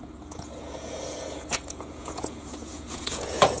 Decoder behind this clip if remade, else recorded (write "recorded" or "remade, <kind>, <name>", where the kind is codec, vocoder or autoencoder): remade, vocoder, Vocos